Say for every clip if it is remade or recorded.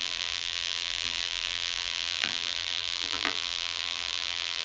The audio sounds remade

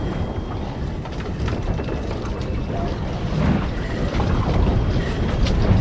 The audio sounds remade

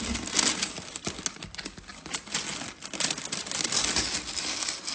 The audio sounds recorded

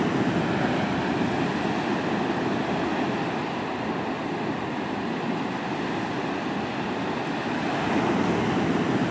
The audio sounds recorded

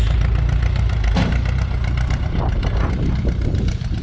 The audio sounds recorded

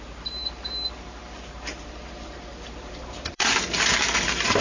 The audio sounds remade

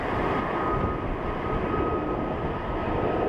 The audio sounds recorded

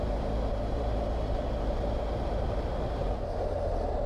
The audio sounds remade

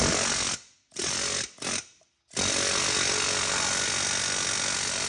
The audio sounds recorded